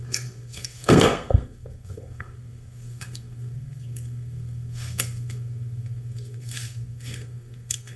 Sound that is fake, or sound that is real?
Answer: fake